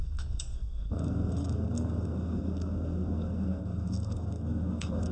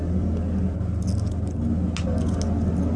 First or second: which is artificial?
first